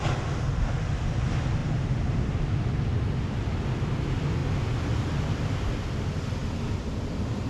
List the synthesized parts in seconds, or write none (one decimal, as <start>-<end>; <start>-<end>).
none